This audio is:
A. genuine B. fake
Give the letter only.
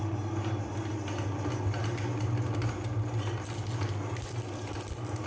A